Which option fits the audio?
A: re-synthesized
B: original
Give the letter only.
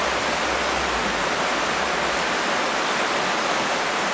B